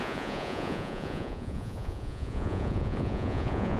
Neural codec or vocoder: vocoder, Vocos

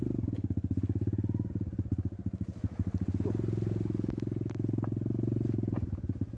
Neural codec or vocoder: none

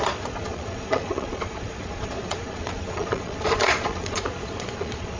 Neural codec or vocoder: vocoder, Vocos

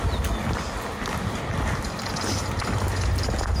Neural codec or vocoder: none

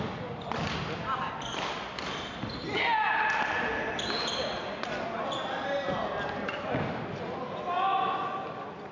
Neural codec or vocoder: none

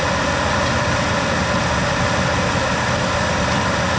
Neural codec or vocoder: none